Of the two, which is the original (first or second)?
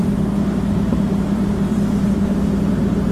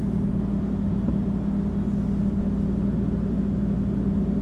second